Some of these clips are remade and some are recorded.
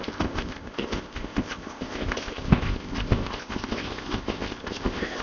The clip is remade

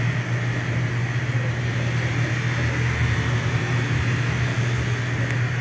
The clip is recorded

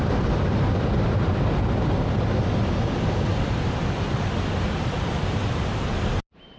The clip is recorded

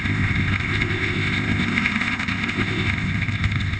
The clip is remade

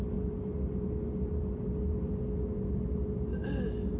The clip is recorded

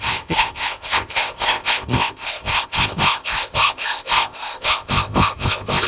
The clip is remade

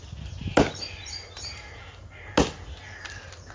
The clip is recorded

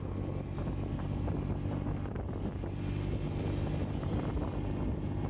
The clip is recorded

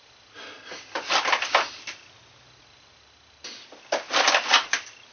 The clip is recorded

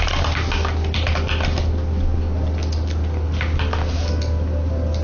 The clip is recorded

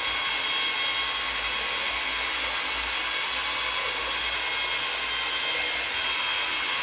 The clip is recorded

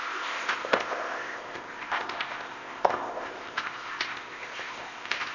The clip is remade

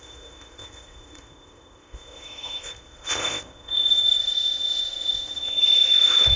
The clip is remade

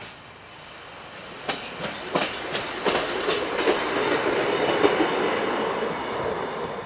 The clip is recorded